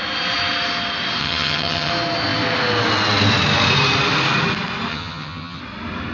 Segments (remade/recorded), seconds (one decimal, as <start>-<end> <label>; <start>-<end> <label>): 0.0-1.2 recorded; 1.2-1.9 remade; 1.9-4.9 recorded; 4.9-5.6 remade; 5.6-6.1 recorded